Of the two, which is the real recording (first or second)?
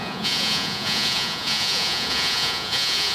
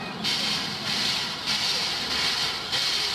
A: second